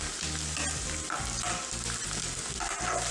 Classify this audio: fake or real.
real